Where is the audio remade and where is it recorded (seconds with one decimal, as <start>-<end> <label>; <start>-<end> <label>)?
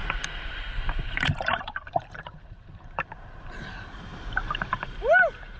0.0-4.1 remade; 4.1-4.7 recorded; 4.7-5.6 remade